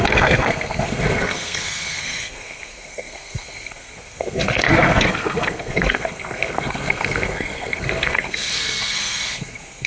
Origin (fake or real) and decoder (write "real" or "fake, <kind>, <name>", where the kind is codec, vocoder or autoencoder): fake, codec, SNAC